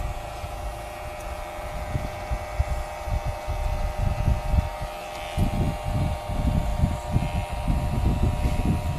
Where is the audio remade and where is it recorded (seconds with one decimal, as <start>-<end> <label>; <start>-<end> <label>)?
0.0-9.0 recorded